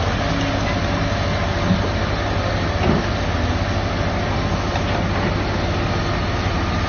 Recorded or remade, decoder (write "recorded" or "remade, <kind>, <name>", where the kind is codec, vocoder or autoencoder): recorded